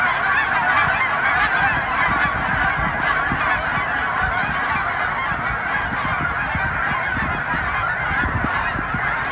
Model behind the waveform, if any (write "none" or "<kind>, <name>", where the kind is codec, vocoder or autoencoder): none